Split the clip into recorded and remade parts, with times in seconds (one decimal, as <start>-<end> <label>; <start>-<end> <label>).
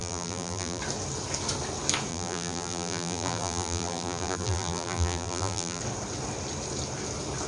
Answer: 0.0-0.8 remade; 0.8-2.1 recorded; 2.1-5.8 remade; 5.8-7.5 recorded